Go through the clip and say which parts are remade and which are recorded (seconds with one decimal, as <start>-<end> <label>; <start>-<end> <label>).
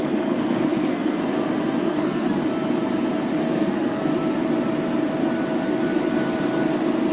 0.0-1.2 remade; 1.2-1.8 recorded; 1.8-2.4 remade; 2.4-3.4 recorded; 3.4-4.0 remade; 4.0-7.1 recorded